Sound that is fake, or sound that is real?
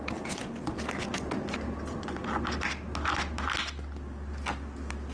real